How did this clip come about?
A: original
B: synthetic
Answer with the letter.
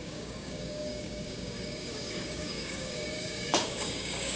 B